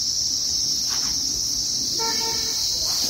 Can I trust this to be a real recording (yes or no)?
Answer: yes